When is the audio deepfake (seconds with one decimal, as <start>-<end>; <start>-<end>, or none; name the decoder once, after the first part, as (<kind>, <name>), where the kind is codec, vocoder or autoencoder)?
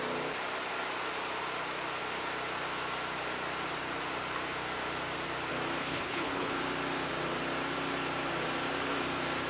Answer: 5.8-6.5 (codec, HILCodec)